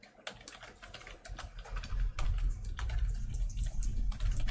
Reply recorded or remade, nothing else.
recorded